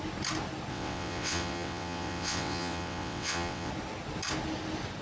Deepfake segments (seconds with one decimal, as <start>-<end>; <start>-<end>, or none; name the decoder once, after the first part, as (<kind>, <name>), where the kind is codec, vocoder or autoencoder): 0.7-3.7 (vocoder, WaveNeXt)